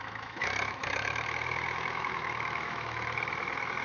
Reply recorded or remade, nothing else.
remade